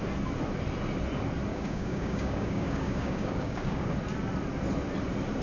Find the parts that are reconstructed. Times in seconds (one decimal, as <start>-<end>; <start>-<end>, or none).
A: 1.5-3.9